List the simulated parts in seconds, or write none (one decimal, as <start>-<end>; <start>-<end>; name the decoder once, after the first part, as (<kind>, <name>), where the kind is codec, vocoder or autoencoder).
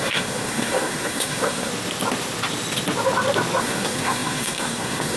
0.0-1.7 (codec, SNAC); 3.6-5.2